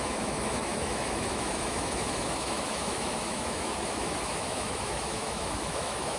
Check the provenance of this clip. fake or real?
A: fake